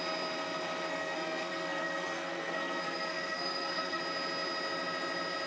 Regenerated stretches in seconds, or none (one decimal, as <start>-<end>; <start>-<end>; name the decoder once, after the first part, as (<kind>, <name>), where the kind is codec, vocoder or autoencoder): 0.9-4.0 (codec, SNAC)